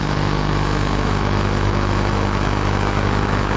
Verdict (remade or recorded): remade